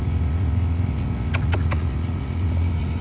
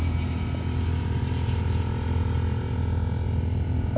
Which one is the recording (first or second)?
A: second